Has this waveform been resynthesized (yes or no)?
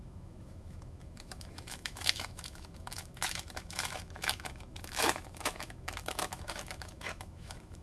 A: yes